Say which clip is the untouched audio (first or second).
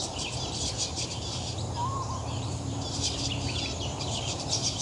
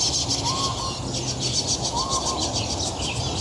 second